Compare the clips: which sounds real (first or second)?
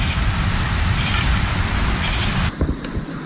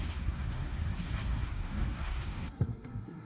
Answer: first